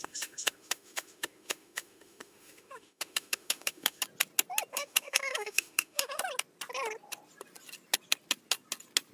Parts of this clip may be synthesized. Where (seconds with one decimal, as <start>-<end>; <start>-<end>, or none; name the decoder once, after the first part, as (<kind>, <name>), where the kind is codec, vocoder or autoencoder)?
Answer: 0.0-4.0 (autoencoder, DAC-VAE); 4.7-6.2